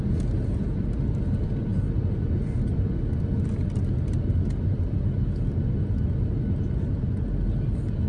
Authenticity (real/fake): real